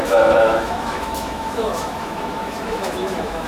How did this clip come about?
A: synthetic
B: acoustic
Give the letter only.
A